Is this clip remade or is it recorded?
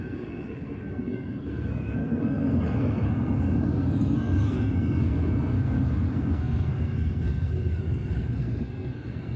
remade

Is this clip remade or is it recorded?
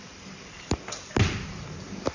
recorded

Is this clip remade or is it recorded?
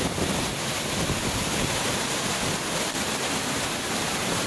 recorded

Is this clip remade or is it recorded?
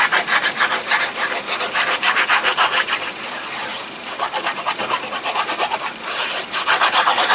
remade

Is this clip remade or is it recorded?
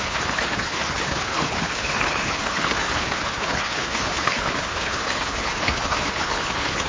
remade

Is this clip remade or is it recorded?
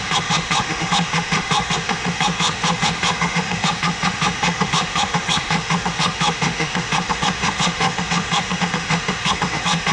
remade